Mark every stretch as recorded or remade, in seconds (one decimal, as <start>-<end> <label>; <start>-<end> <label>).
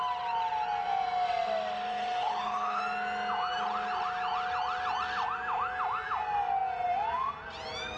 0.0-1.9 recorded; 1.9-2.8 remade; 2.8-8.0 recorded